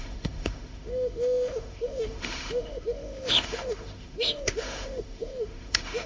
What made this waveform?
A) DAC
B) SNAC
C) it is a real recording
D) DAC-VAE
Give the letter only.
D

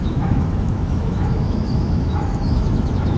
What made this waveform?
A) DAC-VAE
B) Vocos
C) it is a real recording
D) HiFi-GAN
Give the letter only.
A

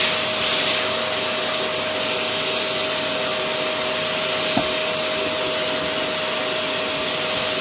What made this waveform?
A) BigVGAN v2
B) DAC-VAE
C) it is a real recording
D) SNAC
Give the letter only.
C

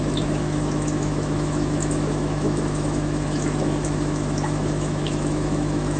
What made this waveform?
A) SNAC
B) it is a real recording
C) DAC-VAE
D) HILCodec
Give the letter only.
C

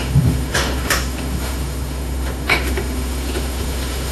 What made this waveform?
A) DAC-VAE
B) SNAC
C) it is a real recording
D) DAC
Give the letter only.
A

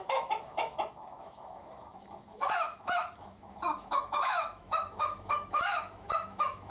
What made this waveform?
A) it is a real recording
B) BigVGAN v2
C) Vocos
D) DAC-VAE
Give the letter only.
D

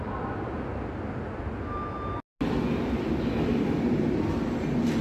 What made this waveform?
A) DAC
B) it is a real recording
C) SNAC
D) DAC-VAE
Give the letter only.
B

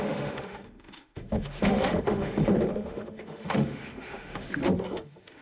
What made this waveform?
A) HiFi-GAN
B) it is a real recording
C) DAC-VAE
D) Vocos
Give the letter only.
C